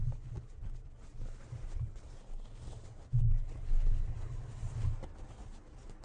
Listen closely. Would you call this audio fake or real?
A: real